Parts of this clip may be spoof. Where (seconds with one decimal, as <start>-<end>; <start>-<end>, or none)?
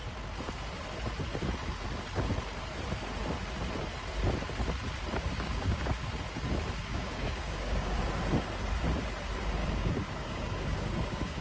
5.3-5.9; 6.9-8.0; 9.6-11.4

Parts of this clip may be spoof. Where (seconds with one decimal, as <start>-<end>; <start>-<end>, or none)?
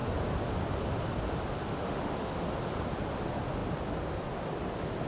1.7-2.3